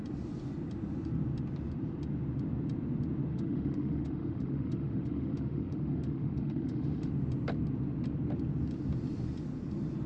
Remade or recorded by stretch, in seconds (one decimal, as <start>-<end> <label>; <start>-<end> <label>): 0.0-3.3 recorded; 3.3-7.1 remade; 7.1-10.1 recorded